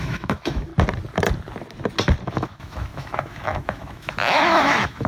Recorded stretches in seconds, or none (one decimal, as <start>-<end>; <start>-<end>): 0.7-2.3